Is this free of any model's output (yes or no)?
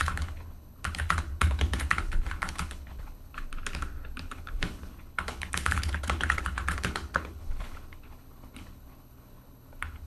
no